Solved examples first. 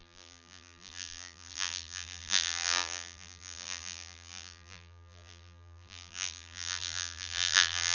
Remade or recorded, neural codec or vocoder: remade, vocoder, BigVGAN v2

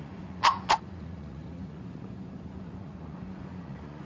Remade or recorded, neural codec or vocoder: remade, vocoder, Vocos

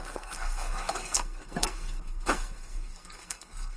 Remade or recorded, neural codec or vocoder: remade, codec, SNAC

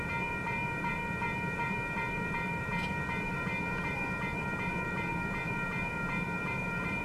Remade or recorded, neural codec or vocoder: remade, vocoder, BigVGAN v2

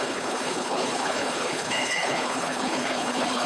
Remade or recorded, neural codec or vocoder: remade, codec, HILCodec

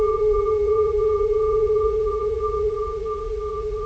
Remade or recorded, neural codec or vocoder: remade, vocoder, Vocos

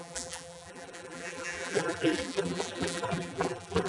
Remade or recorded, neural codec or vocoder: remade, vocoder, BigVGAN v2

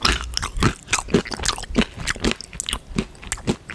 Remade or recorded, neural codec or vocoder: recorded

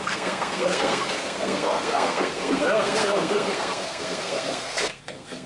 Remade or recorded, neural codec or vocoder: remade, codec, SNAC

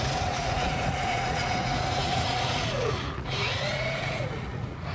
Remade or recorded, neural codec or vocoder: remade, vocoder, Vocos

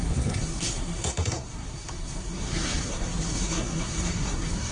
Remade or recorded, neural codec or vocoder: remade, codec, SNAC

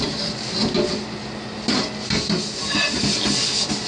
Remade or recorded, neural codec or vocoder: recorded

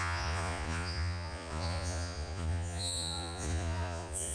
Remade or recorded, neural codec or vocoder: remade, vocoder, Vocos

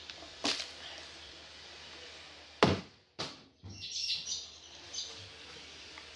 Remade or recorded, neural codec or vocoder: recorded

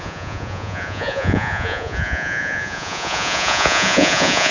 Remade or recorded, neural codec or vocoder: remade, vocoder, Vocos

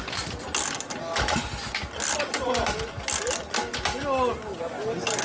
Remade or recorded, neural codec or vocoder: recorded